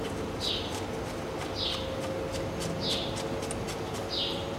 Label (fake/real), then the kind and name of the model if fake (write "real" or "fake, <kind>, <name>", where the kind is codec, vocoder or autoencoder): real